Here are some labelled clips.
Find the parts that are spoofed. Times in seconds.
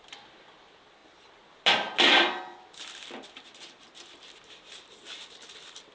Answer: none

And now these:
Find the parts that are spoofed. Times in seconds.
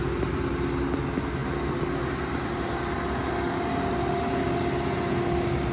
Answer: none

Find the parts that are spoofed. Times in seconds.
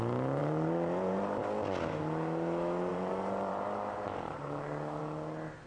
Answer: 0.4-1.4 (vocoder, BigVGAN v2); 2.9-5.0